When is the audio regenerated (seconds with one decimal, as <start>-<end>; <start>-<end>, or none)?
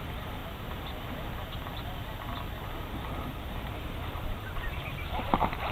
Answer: 0.0-0.4; 2.9-5.7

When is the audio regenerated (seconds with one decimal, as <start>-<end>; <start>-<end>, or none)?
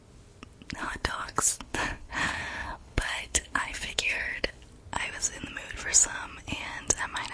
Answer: 0.8-4.6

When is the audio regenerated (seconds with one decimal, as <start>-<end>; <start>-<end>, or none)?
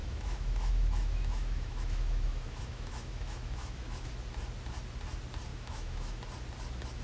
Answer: 0.0-4.1; 5.5-6.2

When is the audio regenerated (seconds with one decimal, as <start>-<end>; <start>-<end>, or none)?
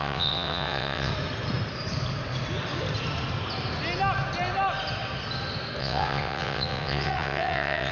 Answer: 0.0-1.1; 5.8-7.9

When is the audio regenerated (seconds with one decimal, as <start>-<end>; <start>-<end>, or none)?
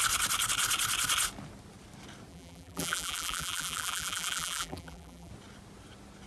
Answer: 2.3-5.3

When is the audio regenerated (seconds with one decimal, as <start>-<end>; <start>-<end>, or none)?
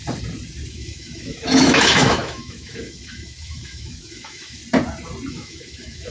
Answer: 0.7-4.6; 5.3-6.1